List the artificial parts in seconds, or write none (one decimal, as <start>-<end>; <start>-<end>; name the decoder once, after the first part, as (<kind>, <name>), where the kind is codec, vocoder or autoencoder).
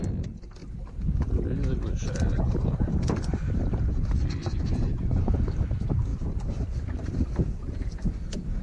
4.4-5.3 (vocoder, Vocos)